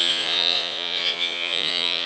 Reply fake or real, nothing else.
fake